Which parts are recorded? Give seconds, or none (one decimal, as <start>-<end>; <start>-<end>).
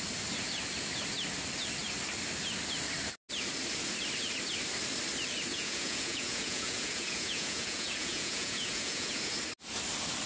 0.0-5.5; 9.3-10.3